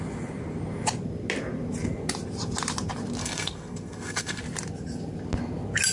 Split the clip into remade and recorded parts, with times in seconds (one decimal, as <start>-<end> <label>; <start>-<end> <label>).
0.0-3.2 recorded; 3.2-4.4 remade; 4.4-5.9 recorded